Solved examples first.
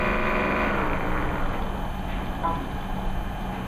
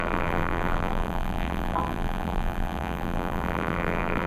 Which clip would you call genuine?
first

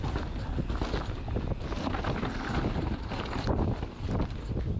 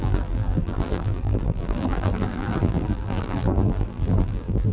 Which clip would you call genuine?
first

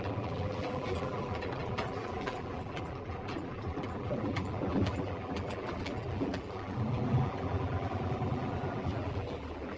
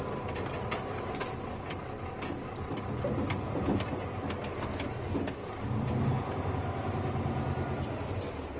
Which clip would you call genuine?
second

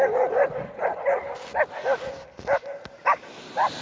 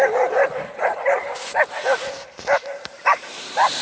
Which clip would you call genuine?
first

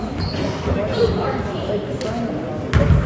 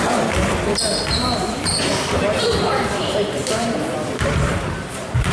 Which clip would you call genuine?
first